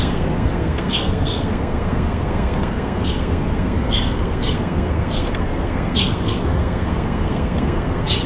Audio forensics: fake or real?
fake